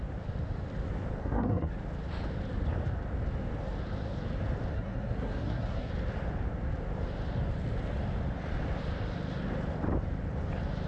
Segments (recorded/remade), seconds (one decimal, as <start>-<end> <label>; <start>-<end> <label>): 0.0-1.2 recorded; 1.2-1.7 remade; 1.7-4.7 recorded; 4.7-5.9 remade; 5.9-10.9 recorded